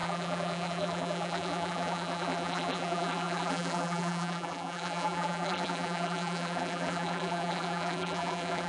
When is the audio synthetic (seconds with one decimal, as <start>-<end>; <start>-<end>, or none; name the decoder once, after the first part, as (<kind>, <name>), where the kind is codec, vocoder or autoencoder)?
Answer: 0.0-8.7 (vocoder, BigVGAN v2)